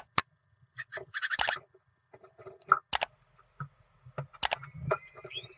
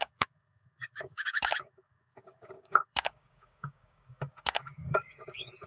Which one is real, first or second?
first